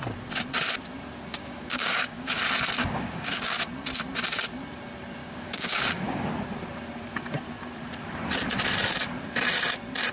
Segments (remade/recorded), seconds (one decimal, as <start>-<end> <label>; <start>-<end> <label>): 0.0-1.3 recorded; 1.3-2.4 remade; 2.4-2.8 recorded; 2.8-3.6 remade; 3.6-5.2 recorded; 5.2-6.3 remade; 6.3-10.1 recorded